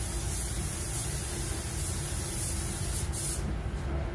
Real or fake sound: real